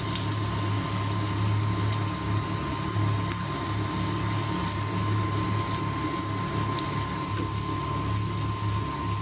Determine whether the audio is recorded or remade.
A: recorded